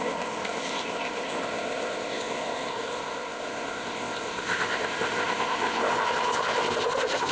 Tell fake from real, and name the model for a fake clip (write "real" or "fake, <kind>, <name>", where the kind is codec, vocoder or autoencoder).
fake, codec, ZipCodec